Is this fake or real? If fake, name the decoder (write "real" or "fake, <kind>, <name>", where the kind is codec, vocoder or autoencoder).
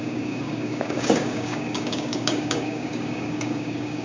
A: fake, codec, DAC